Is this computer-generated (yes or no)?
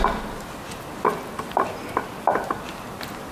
no